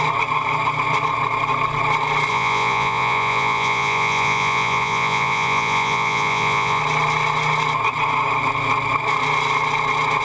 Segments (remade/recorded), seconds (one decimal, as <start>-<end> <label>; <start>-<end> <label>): 0.0-2.3 recorded; 2.3-6.8 remade; 6.8-10.2 recorded